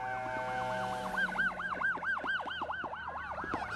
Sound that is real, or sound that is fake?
real